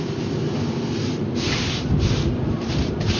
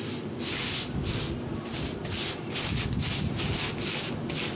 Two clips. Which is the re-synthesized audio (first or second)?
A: first